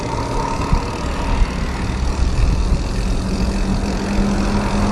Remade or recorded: recorded